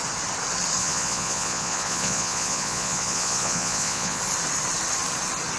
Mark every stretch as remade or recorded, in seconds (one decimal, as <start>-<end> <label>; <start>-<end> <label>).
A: 0.0-0.8 recorded; 0.8-4.2 remade; 4.2-5.6 recorded